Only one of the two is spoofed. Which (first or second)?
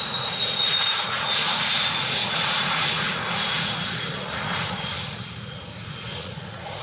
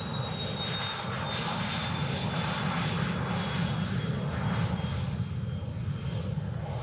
first